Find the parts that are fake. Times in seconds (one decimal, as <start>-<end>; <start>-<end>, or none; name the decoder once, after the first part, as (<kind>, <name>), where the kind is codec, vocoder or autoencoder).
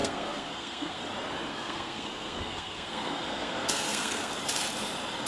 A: 0.0-1.0 (codec, SNAC); 1.5-4.3